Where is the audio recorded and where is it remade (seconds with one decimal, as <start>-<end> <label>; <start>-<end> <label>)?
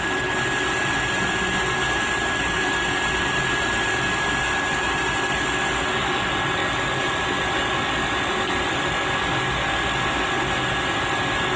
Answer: 0.0-11.6 recorded